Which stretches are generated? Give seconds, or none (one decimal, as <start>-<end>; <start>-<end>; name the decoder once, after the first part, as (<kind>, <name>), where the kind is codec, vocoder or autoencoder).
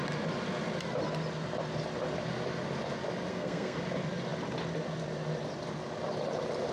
3.3-3.8 (codec, SNAC)